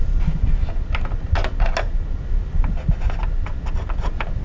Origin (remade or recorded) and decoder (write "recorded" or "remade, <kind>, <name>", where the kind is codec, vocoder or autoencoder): recorded